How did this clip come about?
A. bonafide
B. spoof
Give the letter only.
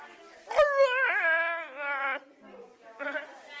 A